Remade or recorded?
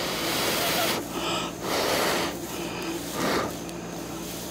remade